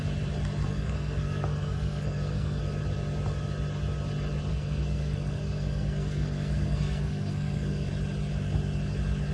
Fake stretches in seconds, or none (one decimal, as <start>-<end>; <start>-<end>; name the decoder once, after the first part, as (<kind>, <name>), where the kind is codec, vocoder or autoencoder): 0.7-2.6 (codec, SNAC); 4.5-7.9

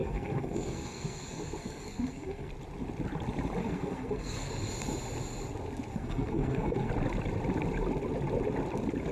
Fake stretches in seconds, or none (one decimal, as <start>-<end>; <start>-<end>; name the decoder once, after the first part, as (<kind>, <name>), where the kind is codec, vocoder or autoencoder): 0.0-2.5 (codec, SNAC); 3.6-4.5; 5.9-6.9

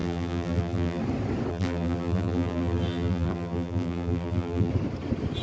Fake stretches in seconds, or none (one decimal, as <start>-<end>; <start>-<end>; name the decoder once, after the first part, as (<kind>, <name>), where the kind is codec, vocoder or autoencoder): 0.0-1.0 (vocoder, BigVGAN v2); 1.5-4.7

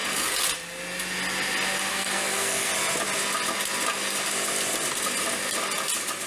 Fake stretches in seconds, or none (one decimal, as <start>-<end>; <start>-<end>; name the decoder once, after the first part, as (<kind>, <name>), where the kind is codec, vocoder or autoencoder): 1.9-2.7 (codec, SNAC)

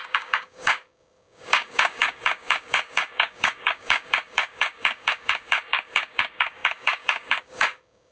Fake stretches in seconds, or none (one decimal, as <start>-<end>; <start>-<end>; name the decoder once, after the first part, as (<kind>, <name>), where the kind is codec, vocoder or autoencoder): 0.0-8.1 (codec, DAC)

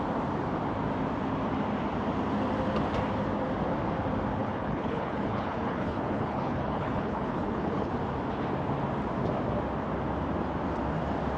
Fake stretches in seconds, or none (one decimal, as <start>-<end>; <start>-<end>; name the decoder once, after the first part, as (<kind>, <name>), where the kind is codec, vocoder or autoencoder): 4.4-7.9 (codec, HILCodec)

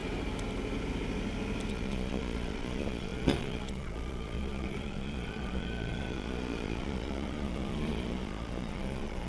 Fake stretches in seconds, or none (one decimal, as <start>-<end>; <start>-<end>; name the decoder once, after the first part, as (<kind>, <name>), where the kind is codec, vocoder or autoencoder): 1.7-9.3 (vocoder, Vocos)

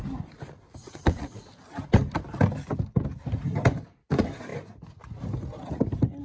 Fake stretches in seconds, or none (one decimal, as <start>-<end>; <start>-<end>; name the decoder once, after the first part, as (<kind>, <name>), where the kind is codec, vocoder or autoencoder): 0.8-1.4 (vocoder, WaveNeXt)